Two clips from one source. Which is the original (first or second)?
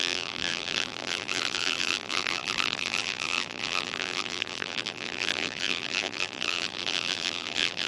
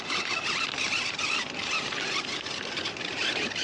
second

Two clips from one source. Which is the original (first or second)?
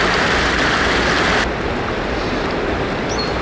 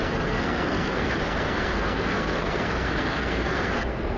first